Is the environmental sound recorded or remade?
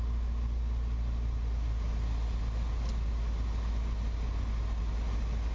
recorded